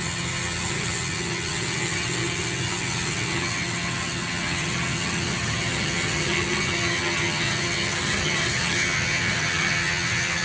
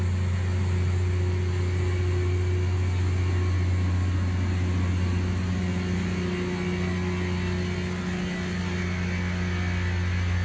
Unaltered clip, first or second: second